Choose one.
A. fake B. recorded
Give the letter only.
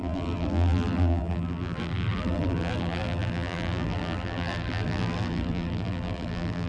A